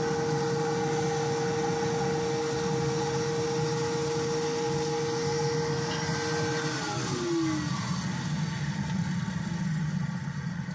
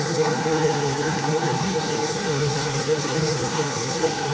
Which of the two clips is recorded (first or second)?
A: first